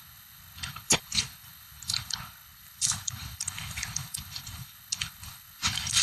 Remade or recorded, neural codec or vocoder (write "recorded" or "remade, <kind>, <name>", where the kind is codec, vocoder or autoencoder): remade, codec, HILCodec